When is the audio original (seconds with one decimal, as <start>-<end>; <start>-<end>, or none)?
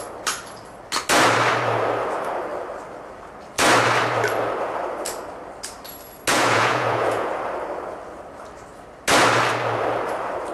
0.0-6.3; 7.3-10.5